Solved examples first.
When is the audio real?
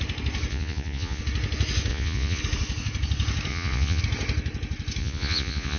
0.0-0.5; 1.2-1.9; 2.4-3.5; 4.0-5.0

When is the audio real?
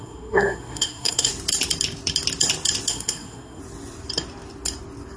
1.3-2.9; 3.6-5.2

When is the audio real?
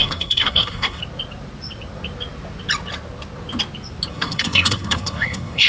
1.0-4.1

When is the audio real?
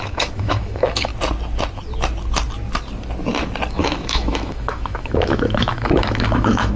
1.1-3.7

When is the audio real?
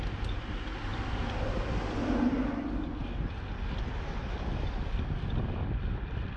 0.0-0.9; 1.4-6.4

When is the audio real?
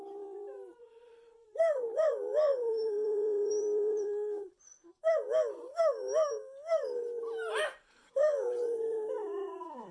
4.7-7.5